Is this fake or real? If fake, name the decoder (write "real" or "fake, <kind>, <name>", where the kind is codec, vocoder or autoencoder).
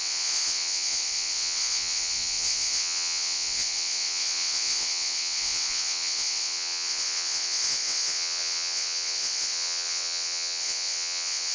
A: fake, vocoder, WaveNeXt